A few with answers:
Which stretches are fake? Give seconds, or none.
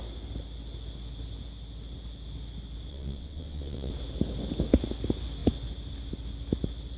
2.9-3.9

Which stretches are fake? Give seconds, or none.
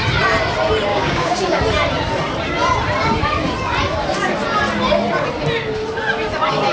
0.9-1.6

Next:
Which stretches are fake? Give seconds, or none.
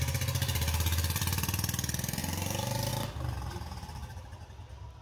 2.2-2.9